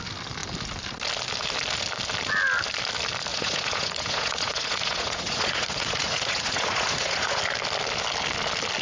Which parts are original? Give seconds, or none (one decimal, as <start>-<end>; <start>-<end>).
0.0-3.3; 7.4-8.8